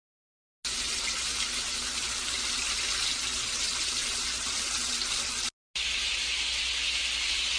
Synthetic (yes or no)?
no